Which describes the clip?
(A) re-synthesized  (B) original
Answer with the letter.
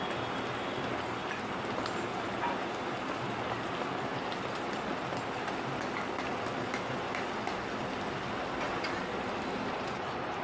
B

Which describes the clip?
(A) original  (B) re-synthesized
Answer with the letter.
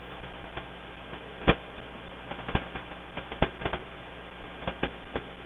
A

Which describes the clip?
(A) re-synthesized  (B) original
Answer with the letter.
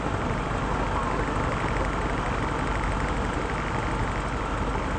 B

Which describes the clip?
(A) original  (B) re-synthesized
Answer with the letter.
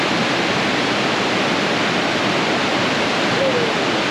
A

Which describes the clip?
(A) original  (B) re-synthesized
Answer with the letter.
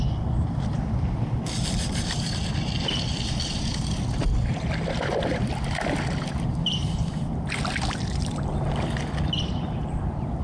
A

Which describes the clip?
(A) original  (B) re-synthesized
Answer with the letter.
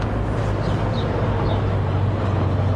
A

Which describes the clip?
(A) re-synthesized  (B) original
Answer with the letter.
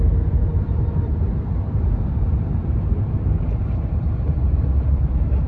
A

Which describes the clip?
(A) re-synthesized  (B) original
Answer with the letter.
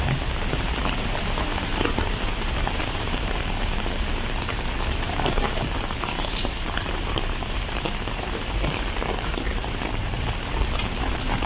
A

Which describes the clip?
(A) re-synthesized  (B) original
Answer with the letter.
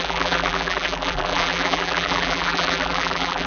A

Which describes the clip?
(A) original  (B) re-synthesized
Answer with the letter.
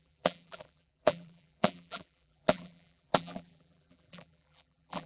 B